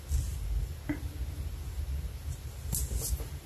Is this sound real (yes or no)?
yes